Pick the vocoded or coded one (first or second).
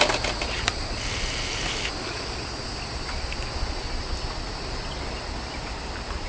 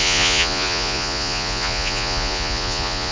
second